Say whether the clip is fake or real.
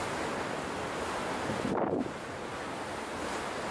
real